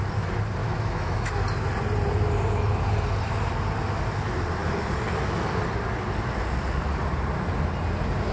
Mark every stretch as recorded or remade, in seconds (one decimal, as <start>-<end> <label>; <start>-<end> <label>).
0.0-0.6 recorded; 0.6-1.3 remade; 1.3-8.3 recorded